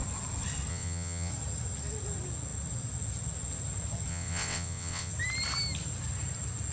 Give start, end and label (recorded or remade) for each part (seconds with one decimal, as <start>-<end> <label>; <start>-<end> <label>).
0.0-0.7 recorded; 0.7-1.3 remade; 1.3-4.1 recorded; 4.1-5.1 remade; 5.1-6.7 recorded